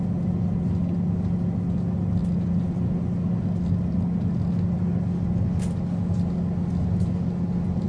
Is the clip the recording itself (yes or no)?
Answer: yes